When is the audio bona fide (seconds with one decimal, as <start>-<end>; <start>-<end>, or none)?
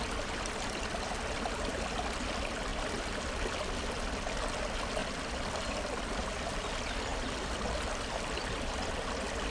0.0-2.7; 3.3-5.0; 6.3-7.1; 8.7-9.5